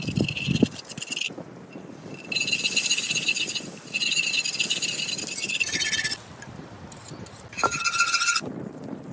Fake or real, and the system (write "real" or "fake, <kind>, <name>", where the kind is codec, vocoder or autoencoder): real